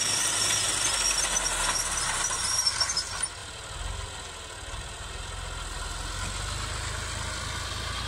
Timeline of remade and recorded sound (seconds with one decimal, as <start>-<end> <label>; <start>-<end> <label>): 0.0-8.1 recorded